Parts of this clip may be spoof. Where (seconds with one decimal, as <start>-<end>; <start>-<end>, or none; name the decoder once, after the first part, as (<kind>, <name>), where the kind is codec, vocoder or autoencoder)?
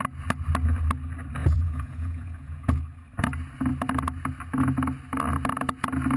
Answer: 1.4-2.8 (vocoder, Vocos)